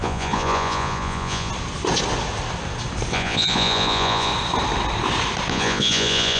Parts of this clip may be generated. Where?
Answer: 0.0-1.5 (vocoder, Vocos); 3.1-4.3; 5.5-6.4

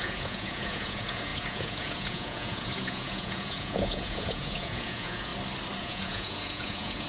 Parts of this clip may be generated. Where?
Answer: 0.0-5.3 (vocoder, Vocos); 5.8-7.1